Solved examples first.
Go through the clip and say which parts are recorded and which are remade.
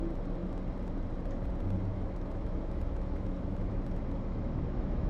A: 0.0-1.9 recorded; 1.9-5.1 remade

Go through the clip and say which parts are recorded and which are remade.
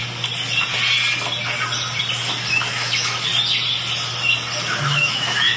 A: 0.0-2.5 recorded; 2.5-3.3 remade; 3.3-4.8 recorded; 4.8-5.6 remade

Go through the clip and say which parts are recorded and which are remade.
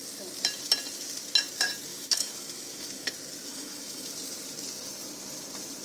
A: 0.0-1.9 recorded; 1.9-3.1 remade; 3.1-3.5 recorded; 3.5-4.1 remade; 4.1-5.8 recorded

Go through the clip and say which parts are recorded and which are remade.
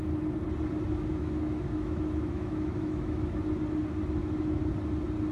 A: 0.0-1.1 recorded; 1.1-3.4 remade; 3.4-4.2 recorded; 4.2-4.7 remade; 4.7-5.3 recorded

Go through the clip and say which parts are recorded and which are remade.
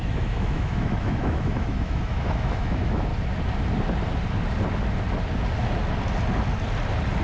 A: 0.0-3.1 remade; 3.1-7.2 recorded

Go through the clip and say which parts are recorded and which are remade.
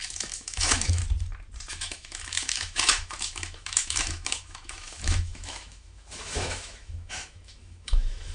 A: 0.0-1.0 remade; 1.0-1.7 recorded; 1.7-8.3 remade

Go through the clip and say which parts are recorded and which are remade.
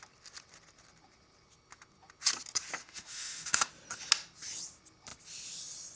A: 0.0-2.8 recorded; 2.8-3.7 remade; 3.7-6.0 recorded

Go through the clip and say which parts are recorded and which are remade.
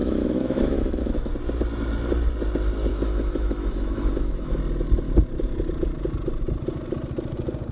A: 0.0-1.3 remade; 1.3-2.9 recorded; 2.9-4.6 remade; 4.6-7.7 recorded